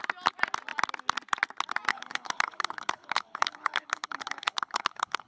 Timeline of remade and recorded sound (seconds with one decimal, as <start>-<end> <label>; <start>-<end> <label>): 0.0-1.9 recorded; 1.9-5.3 remade